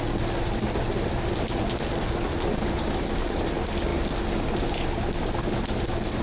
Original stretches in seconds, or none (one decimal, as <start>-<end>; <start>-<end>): 0.0-6.2